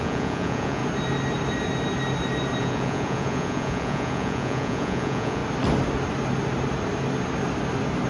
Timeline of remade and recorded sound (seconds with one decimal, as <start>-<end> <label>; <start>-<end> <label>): 0.0-0.8 remade; 0.8-2.6 recorded; 2.6-5.4 remade; 5.4-8.1 recorded